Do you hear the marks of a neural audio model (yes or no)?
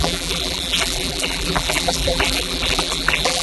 yes